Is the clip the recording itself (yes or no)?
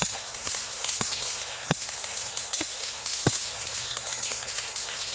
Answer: no